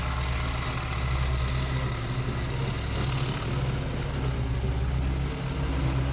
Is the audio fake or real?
real